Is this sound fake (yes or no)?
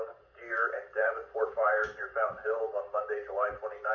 yes